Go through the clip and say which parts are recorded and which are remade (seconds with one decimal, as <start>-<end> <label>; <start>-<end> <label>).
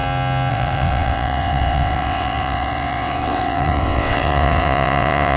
0.0-0.5 recorded; 0.5-5.4 remade